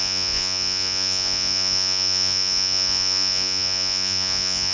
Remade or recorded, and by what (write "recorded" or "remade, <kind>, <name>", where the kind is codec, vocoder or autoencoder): remade, vocoder, Vocos